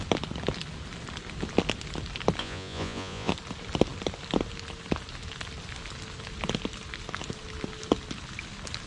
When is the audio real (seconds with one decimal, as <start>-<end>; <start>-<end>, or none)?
0.0-2.4; 3.3-8.9